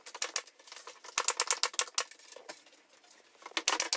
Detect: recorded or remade recorded